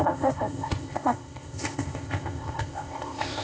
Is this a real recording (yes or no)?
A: no